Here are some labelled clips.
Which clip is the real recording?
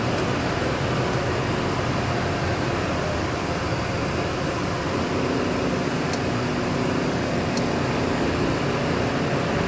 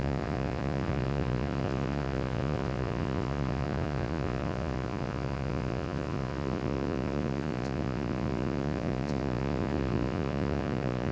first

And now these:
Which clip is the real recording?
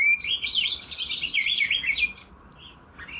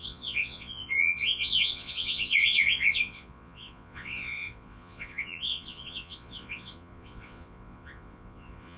first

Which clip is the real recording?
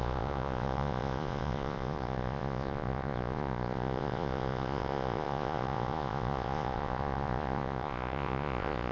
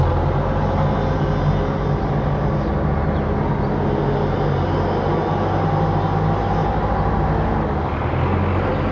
second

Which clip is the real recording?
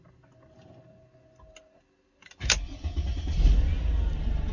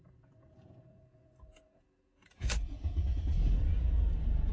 first